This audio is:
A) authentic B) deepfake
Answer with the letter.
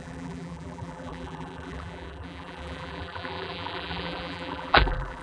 B